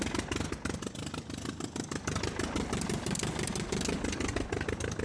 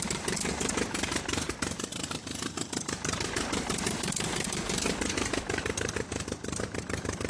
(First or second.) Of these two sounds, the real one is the first